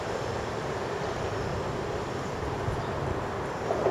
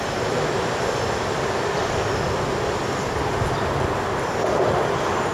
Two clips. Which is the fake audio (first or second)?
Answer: first